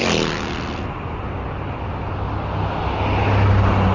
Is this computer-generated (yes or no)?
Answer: no